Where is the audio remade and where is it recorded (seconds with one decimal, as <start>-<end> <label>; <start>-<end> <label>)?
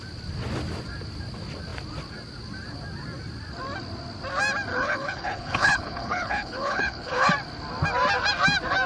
0.0-4.7 recorded; 4.7-7.3 remade; 7.3-8.9 recorded